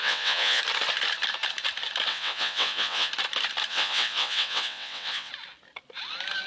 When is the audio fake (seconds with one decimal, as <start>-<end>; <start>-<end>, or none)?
0.0-0.6; 2.1-3.1; 3.7-5.3